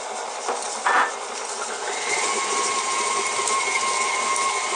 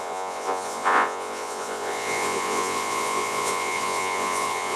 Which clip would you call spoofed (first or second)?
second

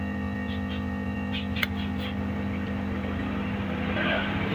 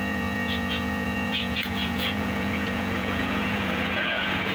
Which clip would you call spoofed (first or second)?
second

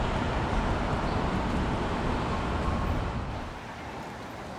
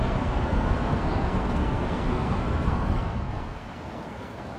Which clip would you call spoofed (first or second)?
second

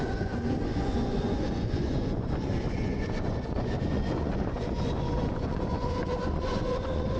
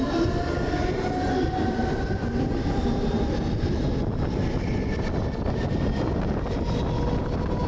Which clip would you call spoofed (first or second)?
first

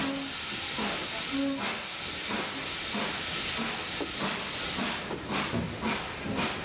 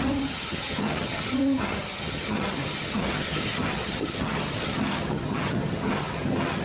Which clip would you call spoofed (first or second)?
second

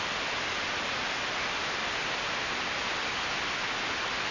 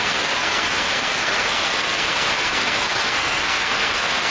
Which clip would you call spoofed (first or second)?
second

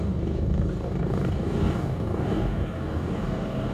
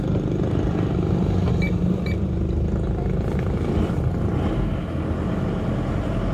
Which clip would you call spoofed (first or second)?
first